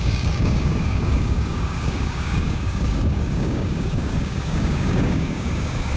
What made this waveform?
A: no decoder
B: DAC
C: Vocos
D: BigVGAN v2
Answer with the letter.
B